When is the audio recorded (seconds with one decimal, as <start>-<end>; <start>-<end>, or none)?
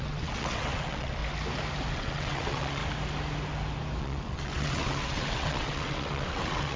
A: 1.2-1.9; 2.8-4.0